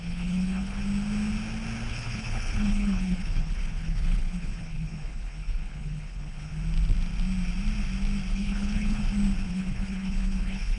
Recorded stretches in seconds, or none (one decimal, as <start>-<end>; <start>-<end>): 0.8-1.9; 6.5-8.3; 9.0-9.5